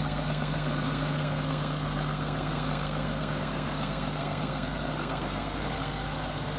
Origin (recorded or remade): remade